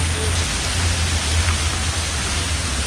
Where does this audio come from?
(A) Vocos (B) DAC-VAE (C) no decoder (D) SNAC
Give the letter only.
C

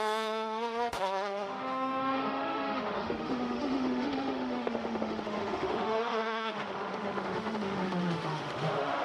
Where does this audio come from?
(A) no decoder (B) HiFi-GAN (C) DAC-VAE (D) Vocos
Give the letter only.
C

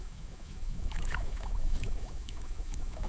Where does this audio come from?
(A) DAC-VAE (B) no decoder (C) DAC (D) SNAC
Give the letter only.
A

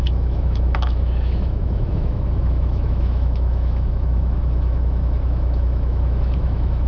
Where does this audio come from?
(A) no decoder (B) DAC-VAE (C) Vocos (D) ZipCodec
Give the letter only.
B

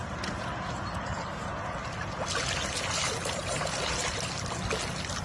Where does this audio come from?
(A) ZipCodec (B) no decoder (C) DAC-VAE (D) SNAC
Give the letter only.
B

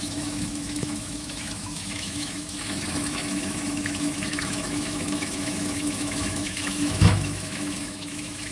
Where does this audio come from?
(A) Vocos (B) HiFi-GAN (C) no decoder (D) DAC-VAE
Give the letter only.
D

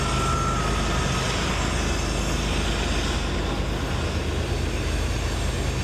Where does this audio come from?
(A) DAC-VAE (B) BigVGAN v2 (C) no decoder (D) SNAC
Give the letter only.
C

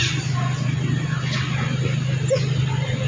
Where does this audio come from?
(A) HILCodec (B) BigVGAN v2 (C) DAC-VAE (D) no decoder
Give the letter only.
D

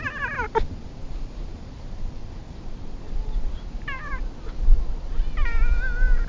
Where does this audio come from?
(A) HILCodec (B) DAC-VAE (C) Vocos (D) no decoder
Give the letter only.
D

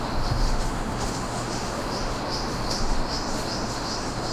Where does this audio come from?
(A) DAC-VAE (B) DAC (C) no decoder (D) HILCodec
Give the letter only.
A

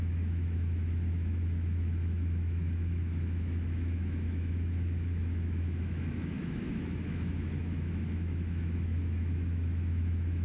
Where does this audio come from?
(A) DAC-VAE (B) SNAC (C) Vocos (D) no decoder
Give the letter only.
A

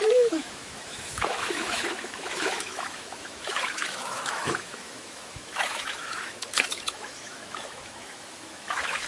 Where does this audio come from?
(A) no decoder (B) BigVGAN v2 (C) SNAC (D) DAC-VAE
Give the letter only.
D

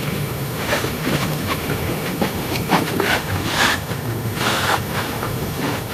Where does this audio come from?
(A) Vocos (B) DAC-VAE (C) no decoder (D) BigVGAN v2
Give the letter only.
B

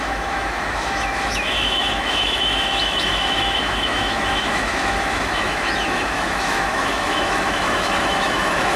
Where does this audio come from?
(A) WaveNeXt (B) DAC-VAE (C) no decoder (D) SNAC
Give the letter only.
B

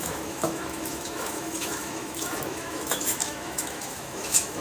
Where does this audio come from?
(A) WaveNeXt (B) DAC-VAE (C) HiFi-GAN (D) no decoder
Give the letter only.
B